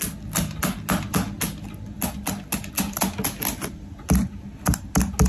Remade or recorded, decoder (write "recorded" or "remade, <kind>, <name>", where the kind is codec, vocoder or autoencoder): recorded